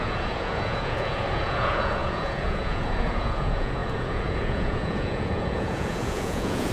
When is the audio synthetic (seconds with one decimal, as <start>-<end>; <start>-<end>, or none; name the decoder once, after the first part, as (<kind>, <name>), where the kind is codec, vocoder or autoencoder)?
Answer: 0.0-6.7 (vocoder, Vocos)